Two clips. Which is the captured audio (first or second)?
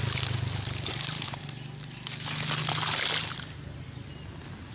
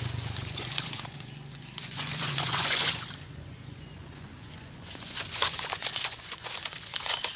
first